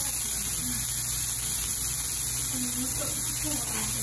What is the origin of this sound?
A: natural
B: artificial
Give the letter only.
A